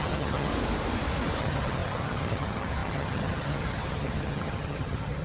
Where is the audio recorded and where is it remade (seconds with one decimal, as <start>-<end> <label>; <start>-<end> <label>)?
0.0-0.5 remade; 0.5-1.4 recorded; 1.4-5.2 remade

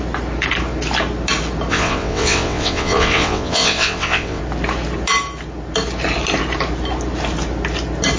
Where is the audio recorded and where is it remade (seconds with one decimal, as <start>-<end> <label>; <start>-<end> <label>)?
0.0-1.7 recorded; 1.7-4.4 remade; 4.4-8.2 recorded